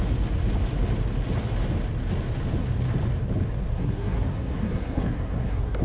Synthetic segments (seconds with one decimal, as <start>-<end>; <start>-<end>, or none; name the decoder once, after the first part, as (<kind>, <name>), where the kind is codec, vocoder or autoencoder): 3.7-5.8 (codec, SNAC)